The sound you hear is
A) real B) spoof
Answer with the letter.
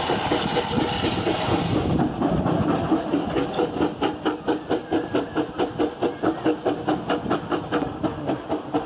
A